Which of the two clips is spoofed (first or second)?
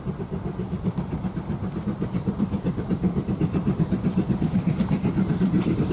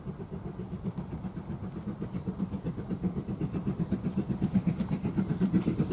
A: first